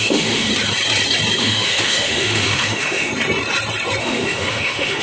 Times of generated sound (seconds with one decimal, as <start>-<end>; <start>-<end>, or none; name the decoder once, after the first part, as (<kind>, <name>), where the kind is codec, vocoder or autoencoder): 0.0-0.5 (autoencoder, DAC-VAE); 1.4-3.1; 4.0-5.0